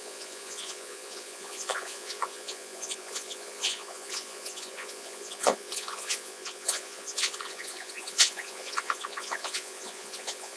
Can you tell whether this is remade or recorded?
remade